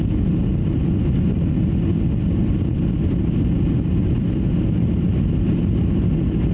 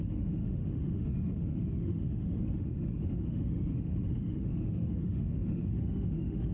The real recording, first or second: first